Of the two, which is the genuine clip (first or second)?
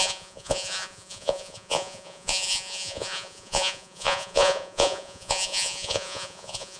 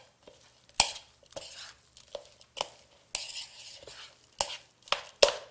second